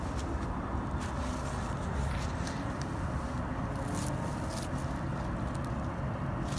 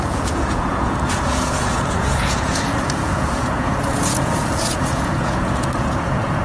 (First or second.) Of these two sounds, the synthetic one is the second